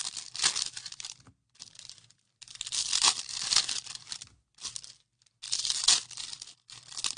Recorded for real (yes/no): yes